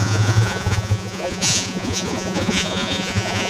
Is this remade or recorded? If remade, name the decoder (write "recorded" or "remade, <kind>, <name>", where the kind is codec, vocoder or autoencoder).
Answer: remade, vocoder, Vocos